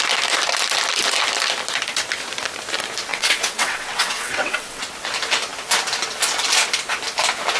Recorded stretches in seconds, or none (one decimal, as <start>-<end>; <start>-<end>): 0.0-3.1; 4.8-7.6